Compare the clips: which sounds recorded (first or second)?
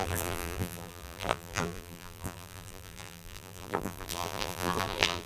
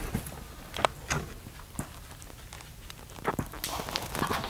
second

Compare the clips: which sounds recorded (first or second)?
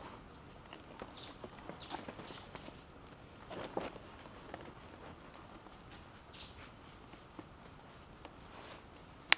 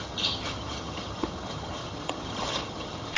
first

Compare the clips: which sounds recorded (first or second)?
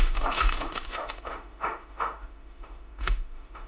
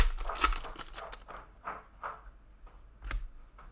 second